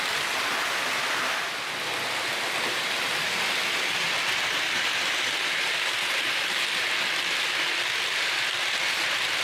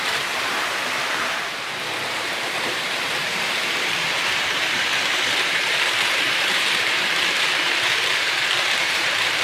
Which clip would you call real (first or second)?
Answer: first